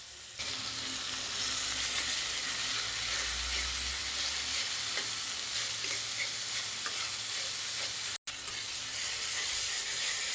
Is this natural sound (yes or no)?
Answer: yes